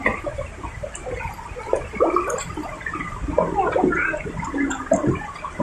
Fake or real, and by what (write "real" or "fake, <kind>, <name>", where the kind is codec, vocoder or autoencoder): real